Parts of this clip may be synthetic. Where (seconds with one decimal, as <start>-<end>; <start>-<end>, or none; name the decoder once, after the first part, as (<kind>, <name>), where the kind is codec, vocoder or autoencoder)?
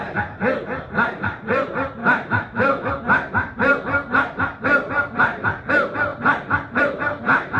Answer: 2.0-2.9 (autoencoder, DAC-VAE)